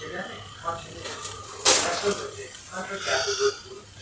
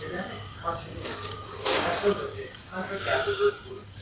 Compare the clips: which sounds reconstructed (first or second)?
second